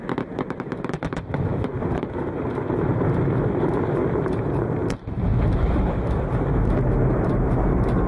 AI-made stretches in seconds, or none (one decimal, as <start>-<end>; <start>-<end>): none